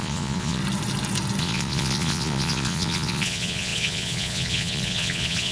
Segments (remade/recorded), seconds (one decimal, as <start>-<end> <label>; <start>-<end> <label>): 0.0-0.6 remade; 0.6-1.4 recorded; 1.4-5.5 remade